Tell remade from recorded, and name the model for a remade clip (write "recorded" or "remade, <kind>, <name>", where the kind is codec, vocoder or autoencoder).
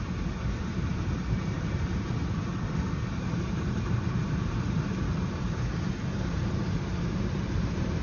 remade, vocoder, BigVGAN v2